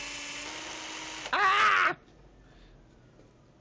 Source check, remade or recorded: recorded